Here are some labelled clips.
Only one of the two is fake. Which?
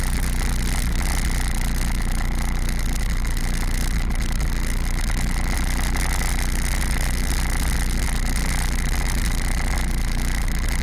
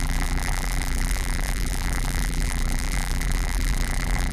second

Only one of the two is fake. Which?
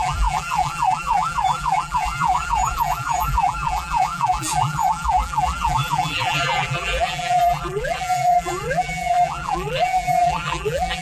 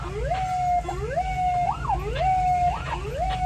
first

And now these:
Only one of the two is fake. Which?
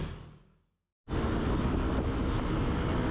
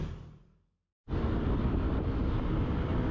second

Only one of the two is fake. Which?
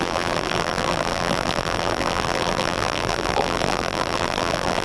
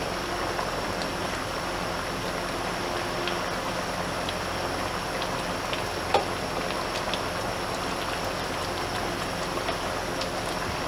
first